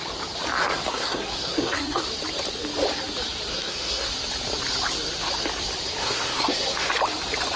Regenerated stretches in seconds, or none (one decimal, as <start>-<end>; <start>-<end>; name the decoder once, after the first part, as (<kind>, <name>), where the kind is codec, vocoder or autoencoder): 0.9-2.0 (codec, SNAC); 3.5-4.1; 6.0-6.9